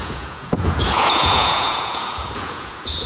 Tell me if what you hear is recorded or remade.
remade